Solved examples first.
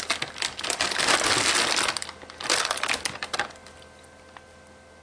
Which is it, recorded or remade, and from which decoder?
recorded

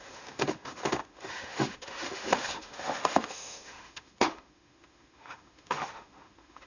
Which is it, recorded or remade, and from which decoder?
remade, autoencoder, DAC-VAE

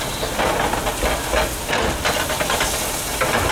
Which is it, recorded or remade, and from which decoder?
recorded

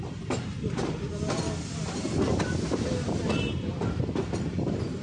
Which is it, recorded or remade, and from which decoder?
recorded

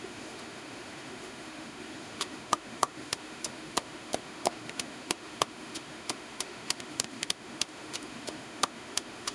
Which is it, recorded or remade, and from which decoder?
remade, autoencoder, DAC-VAE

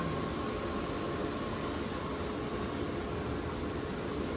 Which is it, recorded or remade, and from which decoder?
recorded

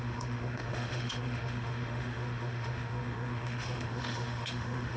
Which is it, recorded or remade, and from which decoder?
remade, autoencoder, DAC-VAE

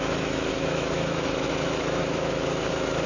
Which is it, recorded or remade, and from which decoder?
remade, autoencoder, DAC-VAE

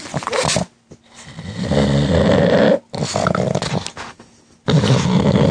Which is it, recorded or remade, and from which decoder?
recorded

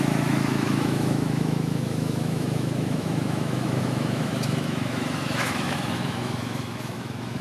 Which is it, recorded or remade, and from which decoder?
remade, autoencoder, DAC-VAE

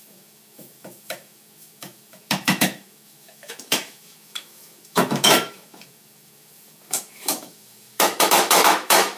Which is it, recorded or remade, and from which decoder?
remade, autoencoder, DAC-VAE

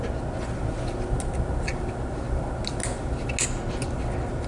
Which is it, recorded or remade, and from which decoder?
recorded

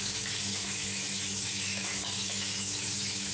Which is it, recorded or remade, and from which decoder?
remade, autoencoder, DAC-VAE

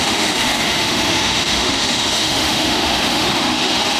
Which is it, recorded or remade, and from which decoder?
remade, autoencoder, DAC-VAE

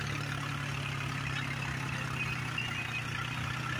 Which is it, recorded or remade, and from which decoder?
recorded